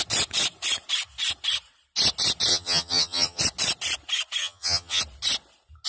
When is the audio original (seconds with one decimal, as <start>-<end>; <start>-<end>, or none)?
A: 0.0-2.5; 3.4-4.4; 5.0-5.9